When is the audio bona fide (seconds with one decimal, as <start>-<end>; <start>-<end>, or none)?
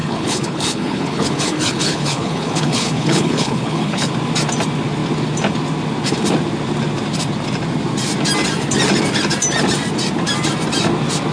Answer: 4.1-11.3